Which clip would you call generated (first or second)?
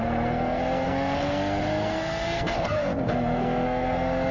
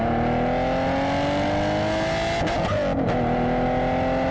first